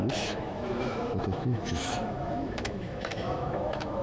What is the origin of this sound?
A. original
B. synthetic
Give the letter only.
B